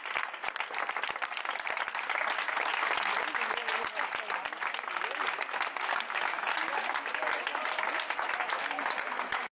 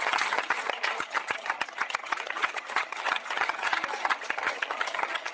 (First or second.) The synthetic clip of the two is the second